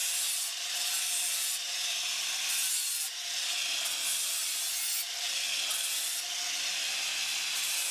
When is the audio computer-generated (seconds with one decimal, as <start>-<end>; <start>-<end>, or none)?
none